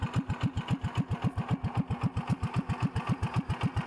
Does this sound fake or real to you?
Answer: real